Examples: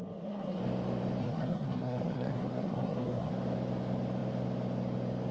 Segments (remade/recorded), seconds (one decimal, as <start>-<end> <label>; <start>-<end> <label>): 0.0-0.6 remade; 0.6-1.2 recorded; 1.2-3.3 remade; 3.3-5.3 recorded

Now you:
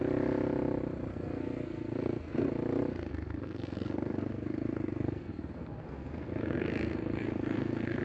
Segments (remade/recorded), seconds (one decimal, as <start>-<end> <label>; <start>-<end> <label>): 0.0-1.1 recorded; 1.1-2.5 remade; 2.5-2.9 recorded; 2.9-8.0 remade

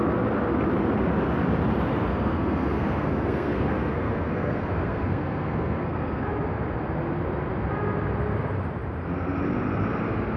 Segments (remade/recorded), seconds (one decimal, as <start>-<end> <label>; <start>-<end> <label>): 0.0-2.1 recorded; 2.1-6.3 remade; 6.3-10.4 recorded

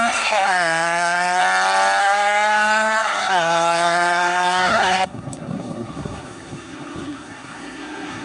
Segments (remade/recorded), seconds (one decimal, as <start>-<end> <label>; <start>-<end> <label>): 0.0-1.4 remade; 1.4-2.0 recorded; 2.0-8.2 remade